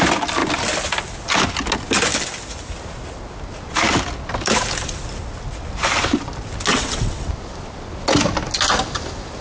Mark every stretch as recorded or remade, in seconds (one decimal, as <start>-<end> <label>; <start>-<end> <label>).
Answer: 0.0-6.7 recorded; 6.7-7.3 remade; 7.3-9.4 recorded